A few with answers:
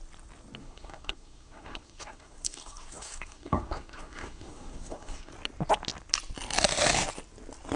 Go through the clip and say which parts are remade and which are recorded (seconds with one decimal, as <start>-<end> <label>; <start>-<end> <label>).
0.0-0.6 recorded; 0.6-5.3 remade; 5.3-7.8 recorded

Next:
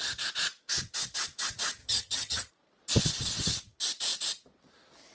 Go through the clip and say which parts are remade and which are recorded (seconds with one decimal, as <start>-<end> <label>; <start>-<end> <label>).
0.0-1.8 recorded; 1.8-2.5 remade; 2.5-5.1 recorded

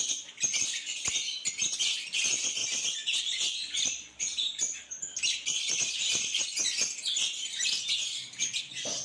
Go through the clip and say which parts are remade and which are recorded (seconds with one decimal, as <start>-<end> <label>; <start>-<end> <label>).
0.0-2.6 recorded; 2.6-6.4 remade; 6.4-9.0 recorded